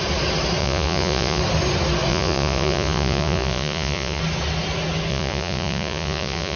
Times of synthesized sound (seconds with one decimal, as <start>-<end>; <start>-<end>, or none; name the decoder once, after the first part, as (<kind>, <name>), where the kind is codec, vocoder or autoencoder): 0.6-1.4 (vocoder, Vocos); 2.1-4.2; 5.1-6.6